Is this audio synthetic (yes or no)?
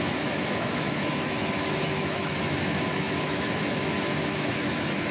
yes